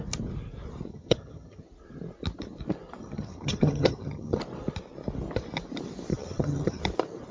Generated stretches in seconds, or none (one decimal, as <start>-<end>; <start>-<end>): 0.9-1.6; 3.0-4.4; 6.1-6.8